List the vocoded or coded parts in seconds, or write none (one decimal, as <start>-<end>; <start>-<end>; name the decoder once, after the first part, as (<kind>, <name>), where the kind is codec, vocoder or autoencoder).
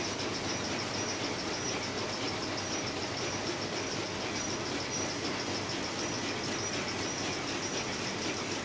3.0-4.0 (vocoder, BigVGAN v2)